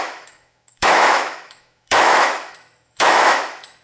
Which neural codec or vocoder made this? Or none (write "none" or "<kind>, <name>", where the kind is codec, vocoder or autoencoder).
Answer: autoencoder, DAC-VAE